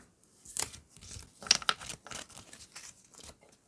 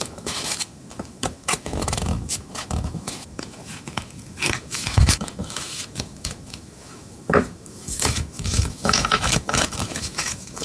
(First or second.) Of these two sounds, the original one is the first